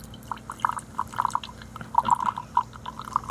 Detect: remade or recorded recorded